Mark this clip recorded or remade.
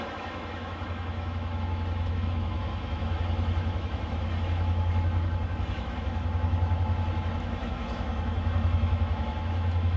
remade